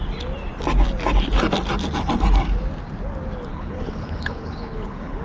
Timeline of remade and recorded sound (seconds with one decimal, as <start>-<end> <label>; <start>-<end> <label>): 0.0-3.5 recorded; 3.5-5.2 remade